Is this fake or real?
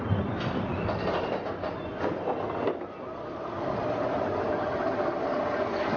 real